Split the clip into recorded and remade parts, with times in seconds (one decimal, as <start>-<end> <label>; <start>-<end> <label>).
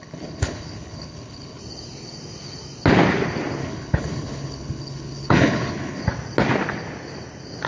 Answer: 0.0-1.6 remade; 1.6-3.6 recorded; 3.6-6.0 remade; 6.0-7.7 recorded